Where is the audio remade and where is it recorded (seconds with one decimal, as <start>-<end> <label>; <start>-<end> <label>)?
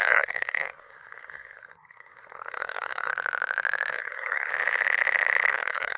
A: 0.0-3.1 remade; 3.1-3.9 recorded; 3.9-4.5 remade; 4.5-5.5 recorded; 5.5-6.0 remade